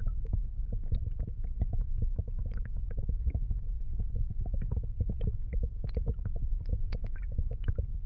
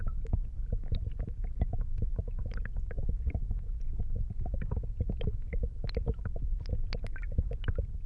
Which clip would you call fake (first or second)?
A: first